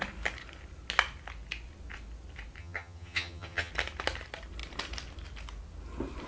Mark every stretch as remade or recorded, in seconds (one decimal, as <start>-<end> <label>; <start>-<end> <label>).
0.0-2.6 recorded; 2.6-3.7 remade; 3.7-6.3 recorded